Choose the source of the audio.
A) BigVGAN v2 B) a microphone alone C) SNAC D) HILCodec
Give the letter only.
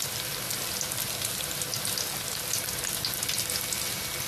B